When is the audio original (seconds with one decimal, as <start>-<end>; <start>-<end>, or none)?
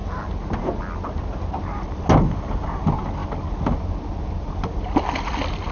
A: 0.0-5.7